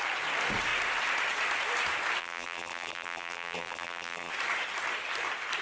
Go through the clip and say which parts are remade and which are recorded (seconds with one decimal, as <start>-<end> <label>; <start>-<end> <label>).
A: 0.0-2.2 recorded; 2.2-4.3 remade; 4.3-5.6 recorded